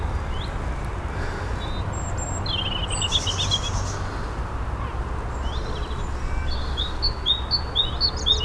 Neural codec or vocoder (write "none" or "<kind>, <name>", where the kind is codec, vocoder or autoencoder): none